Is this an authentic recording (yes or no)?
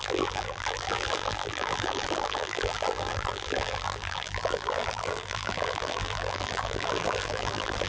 no